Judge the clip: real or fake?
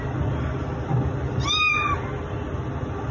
real